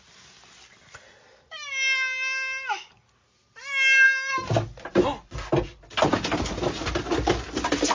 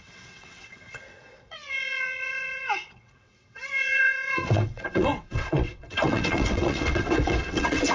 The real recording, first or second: first